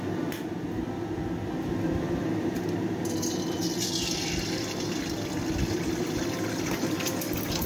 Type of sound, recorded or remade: recorded